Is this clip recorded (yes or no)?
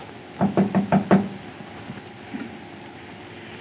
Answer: yes